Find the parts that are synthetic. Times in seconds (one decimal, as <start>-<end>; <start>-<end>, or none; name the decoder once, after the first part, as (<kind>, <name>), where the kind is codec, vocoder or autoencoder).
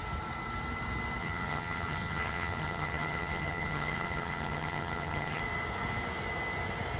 1.2-5.4 (vocoder, HiFi-GAN)